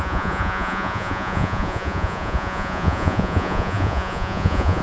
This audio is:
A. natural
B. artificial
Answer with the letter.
B